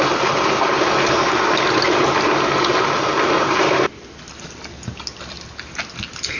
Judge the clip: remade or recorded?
recorded